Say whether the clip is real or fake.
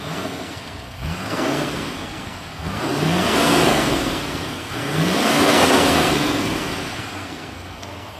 fake